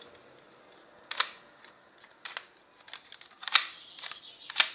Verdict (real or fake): real